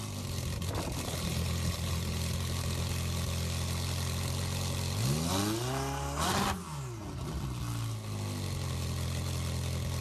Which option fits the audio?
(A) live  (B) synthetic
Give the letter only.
A